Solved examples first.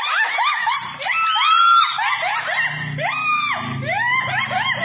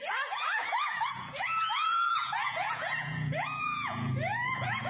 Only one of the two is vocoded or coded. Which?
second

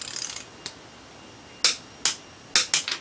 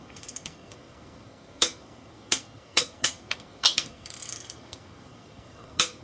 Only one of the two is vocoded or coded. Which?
second